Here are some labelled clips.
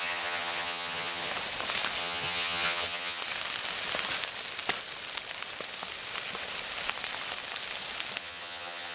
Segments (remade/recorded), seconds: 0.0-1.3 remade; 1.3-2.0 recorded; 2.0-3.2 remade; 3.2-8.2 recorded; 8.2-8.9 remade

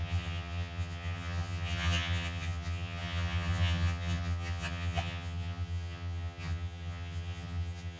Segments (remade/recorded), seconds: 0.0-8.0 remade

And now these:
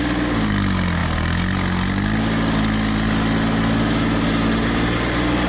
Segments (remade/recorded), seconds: 0.0-5.5 recorded

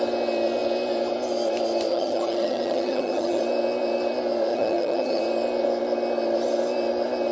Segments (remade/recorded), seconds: 0.0-1.9 recorded; 1.9-3.4 remade; 3.4-4.5 recorded; 4.5-5.2 remade; 5.2-7.3 recorded

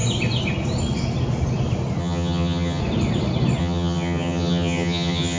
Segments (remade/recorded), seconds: 0.0-2.0 recorded; 2.0-2.8 remade; 2.8-3.6 recorded; 3.6-5.4 remade

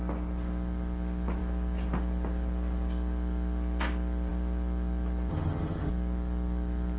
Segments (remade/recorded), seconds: 0.0-5.3 recorded; 5.3-5.9 remade; 5.9-7.0 recorded

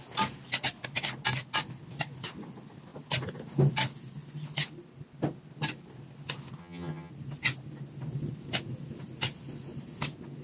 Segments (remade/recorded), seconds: 0.0-6.6 recorded; 6.6-7.1 remade; 7.1-10.4 recorded